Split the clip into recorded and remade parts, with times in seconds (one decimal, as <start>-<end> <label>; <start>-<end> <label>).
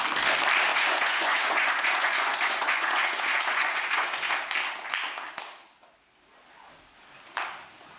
0.0-0.7 recorded; 0.7-4.3 remade; 4.3-8.0 recorded